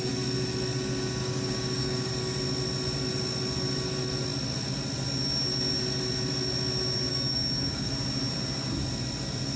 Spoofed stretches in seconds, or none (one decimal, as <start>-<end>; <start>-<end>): 1.2-2.1; 7.1-7.9